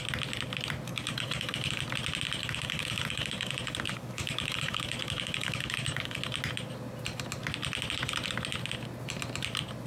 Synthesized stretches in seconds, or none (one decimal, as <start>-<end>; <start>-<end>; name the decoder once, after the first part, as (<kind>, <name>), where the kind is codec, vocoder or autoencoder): 0.9-1.8 (codec, DAC); 2.4-6.2